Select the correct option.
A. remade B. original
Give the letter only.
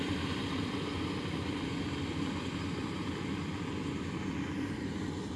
B